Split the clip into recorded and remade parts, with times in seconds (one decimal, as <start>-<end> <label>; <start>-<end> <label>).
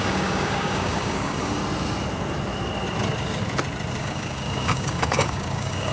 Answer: 0.0-1.6 remade; 1.6-4.0 recorded; 4.0-5.9 remade